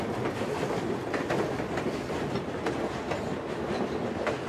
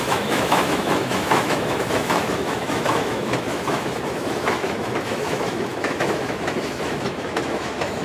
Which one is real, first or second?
first